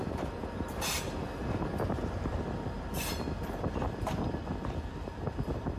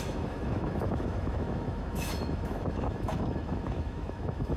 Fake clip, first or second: second